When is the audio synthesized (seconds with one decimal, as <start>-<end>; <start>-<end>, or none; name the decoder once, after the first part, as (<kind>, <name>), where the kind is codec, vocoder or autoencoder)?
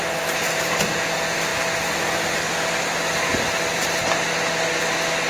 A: none